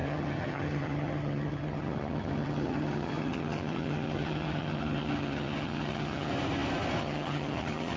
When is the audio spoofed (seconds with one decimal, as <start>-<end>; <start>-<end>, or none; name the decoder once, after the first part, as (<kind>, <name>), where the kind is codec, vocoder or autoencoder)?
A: 0.0-6.3 (vocoder, HiFi-GAN); 7.0-8.0